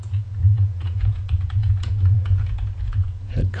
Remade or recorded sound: remade